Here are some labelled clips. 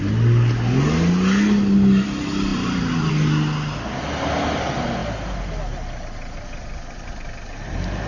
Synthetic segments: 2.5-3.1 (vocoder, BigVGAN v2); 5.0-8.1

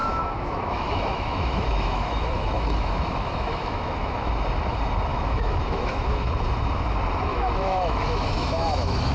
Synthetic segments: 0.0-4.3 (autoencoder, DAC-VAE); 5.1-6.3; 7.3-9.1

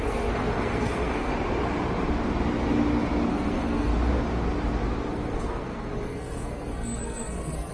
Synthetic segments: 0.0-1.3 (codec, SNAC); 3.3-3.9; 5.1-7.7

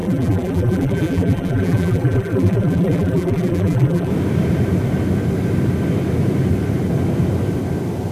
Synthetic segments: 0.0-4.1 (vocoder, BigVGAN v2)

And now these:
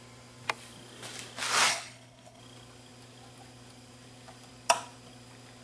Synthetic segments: 1.7-2.4 (codec, HILCodec)

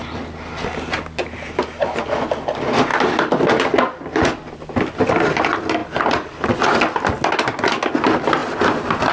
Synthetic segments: none

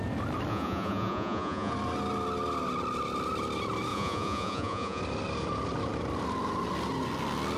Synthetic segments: 0.5-1.7 (vocoder, Vocos); 3.9-5.0

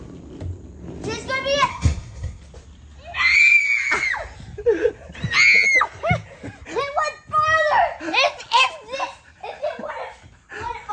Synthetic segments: 1.7-2.4 (codec, SNAC)